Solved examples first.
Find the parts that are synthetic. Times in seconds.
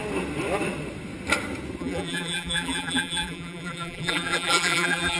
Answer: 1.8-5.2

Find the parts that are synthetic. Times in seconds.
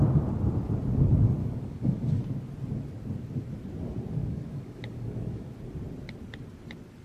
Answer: 1.4-2.2; 4.2-5.5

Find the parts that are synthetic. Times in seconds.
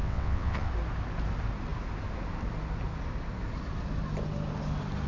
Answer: 0.0-0.7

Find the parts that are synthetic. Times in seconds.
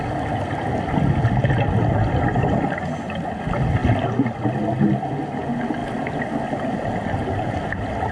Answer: none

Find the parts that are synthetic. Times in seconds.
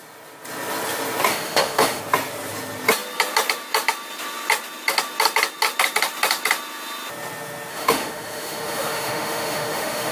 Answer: 1.3-2.0; 7.7-10.1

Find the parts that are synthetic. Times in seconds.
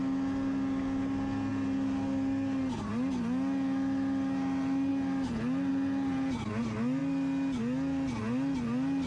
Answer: none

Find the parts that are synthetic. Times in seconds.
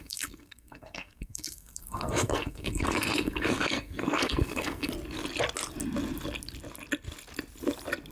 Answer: 0.0-4.9